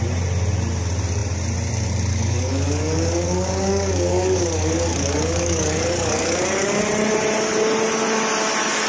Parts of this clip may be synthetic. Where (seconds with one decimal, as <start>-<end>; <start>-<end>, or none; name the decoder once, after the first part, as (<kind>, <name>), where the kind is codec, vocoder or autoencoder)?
2.1-6.8 (codec, DAC)